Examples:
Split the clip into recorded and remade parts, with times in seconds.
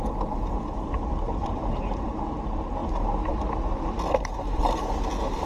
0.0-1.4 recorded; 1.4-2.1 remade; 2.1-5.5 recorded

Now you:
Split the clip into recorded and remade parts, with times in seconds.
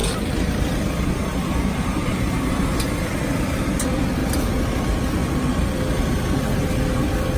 0.0-4.2 remade; 4.2-4.8 recorded; 4.8-7.4 remade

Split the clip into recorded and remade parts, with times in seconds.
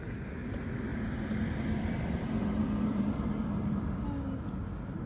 0.0-0.9 recorded; 0.9-4.0 remade; 4.0-5.1 recorded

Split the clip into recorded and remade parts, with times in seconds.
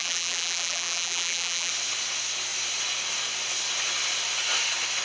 0.0-1.7 remade; 1.7-5.0 recorded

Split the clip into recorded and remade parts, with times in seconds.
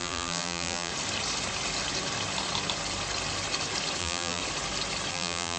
0.0-0.9 remade; 0.9-4.0 recorded; 4.0-4.4 remade; 4.4-5.1 recorded; 5.1-5.6 remade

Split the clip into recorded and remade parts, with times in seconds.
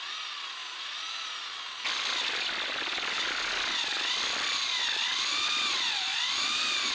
0.0-0.6 recorded; 0.6-4.4 remade; 4.4-6.1 recorded; 6.1-6.9 remade